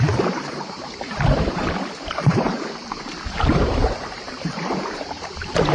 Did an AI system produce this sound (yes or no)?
yes